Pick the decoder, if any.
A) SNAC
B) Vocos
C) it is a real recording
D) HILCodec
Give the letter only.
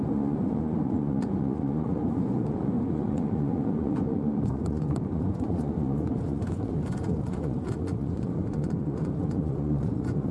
B